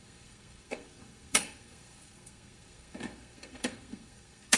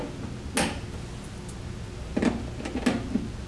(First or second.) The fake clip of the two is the first